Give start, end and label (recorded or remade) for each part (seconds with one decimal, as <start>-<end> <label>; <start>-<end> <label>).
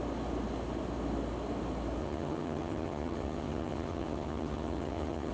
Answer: 0.0-2.0 recorded; 2.0-5.3 remade